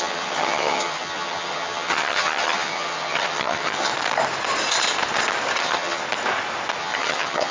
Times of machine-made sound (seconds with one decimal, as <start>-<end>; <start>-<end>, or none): 0.0-3.9; 5.6-6.0; 6.8-7.5